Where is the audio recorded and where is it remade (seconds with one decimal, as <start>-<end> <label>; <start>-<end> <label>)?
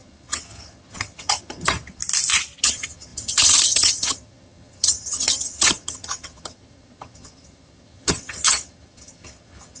0.0-2.0 remade; 2.0-2.6 recorded; 2.6-9.8 remade